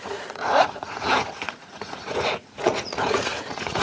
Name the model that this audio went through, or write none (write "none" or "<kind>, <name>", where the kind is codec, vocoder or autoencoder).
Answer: vocoder, Vocos